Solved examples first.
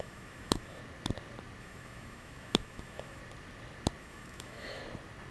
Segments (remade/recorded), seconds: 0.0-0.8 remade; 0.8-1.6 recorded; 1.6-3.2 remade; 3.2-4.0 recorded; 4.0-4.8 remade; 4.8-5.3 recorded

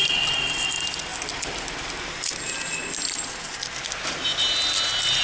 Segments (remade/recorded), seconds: 0.0-1.1 remade; 1.1-4.1 recorded; 4.1-5.2 remade

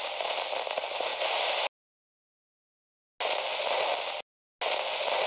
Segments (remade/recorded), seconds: 0.0-5.3 recorded

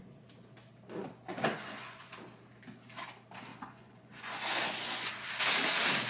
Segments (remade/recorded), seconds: 0.0-1.3 recorded; 1.3-2.1 remade; 2.1-3.5 recorded; 3.5-5.1 remade; 5.1-6.1 recorded

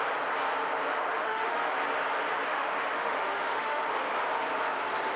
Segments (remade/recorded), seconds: 0.0-1.1 recorded; 1.1-1.7 remade; 1.7-2.5 recorded; 2.5-4.0 remade; 4.0-5.2 recorded